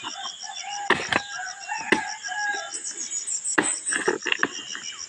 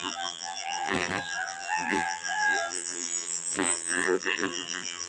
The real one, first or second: first